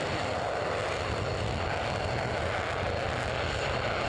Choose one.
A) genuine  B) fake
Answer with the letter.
A